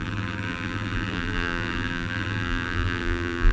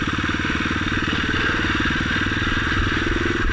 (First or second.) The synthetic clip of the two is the first